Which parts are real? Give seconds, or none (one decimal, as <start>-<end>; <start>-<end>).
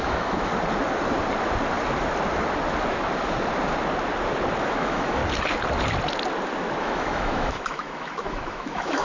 0.5-4.7; 5.2-6.8